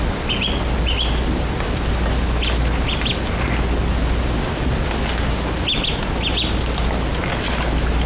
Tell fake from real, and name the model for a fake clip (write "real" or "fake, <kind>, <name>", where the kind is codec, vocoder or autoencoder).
real